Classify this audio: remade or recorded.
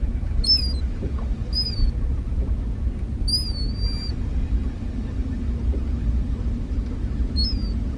recorded